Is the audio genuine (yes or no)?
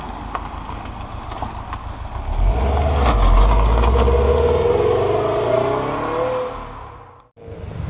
yes